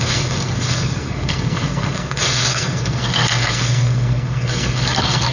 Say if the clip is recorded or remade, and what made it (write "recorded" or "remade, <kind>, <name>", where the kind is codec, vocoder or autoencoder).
remade, codec, SNAC